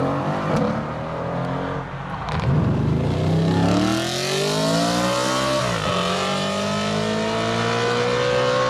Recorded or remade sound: recorded